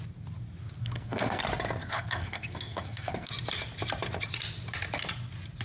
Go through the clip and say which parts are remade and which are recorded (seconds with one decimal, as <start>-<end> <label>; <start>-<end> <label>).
0.0-0.8 recorded; 0.8-1.4 remade; 1.4-1.8 recorded; 1.8-3.3 remade; 3.3-5.6 recorded